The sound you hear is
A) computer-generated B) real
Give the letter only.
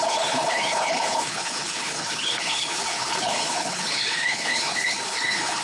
A